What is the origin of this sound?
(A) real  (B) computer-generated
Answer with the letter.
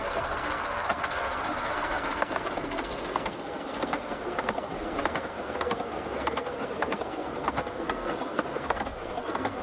B